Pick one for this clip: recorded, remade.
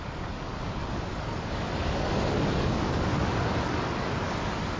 remade